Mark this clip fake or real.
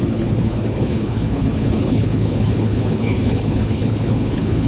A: fake